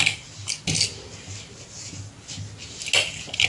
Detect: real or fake real